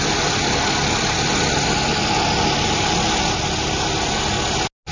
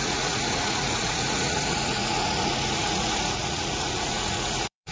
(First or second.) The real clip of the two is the first